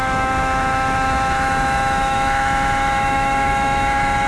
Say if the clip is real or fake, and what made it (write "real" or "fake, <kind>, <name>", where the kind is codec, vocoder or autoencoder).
fake, autoencoder, DAC-VAE